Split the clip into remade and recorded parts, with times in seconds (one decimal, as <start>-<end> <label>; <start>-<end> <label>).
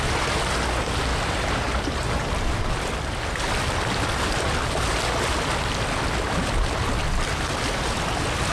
0.0-1.1 recorded; 1.1-2.7 remade; 2.7-8.5 recorded